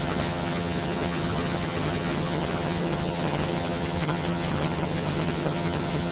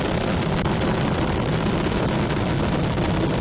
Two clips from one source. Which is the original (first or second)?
second